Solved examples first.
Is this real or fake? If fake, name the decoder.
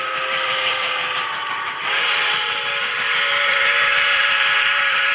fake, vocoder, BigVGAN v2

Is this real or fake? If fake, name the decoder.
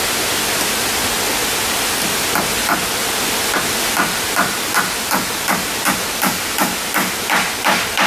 real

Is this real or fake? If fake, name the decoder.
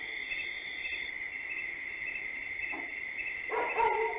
real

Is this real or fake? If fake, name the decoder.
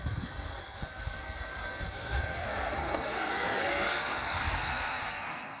fake, codec, SNAC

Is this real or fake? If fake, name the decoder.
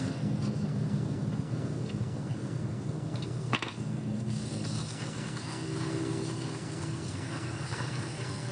fake, codec, SNAC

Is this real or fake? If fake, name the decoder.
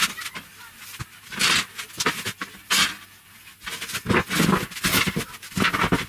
real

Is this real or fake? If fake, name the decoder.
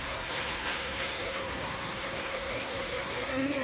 fake, codec, SNAC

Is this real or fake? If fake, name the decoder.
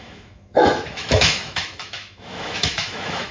fake, autoencoder, DAC-VAE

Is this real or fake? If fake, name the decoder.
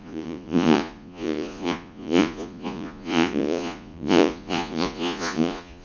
fake, vocoder, Vocos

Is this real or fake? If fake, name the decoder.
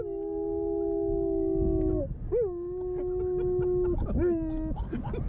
real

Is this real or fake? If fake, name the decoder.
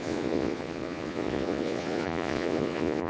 fake, vocoder, Vocos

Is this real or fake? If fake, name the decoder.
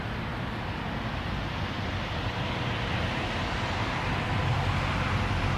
real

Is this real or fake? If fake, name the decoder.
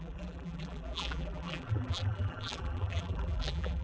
fake, vocoder, BigVGAN v2